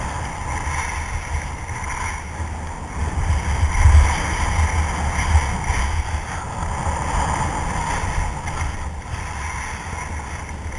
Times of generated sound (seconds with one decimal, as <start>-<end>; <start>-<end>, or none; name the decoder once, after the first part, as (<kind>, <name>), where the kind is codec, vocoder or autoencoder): none